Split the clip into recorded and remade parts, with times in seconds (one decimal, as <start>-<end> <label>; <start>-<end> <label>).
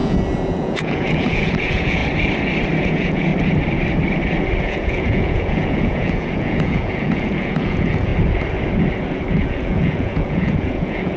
0.0-2.0 remade; 2.0-2.8 recorded; 2.8-3.3 remade; 3.3-4.6 recorded; 4.6-8.1 remade; 8.1-9.4 recorded; 9.4-11.2 remade